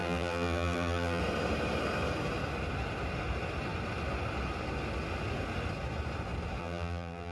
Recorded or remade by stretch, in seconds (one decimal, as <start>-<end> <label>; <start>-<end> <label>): 0.0-1.2 remade; 1.2-6.6 recorded; 6.6-7.3 remade